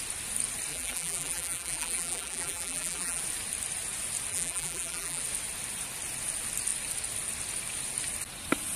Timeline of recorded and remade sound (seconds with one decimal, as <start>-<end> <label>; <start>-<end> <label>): 0.0-0.7 recorded; 0.7-3.2 remade; 3.2-4.3 recorded; 4.3-5.2 remade; 5.2-8.8 recorded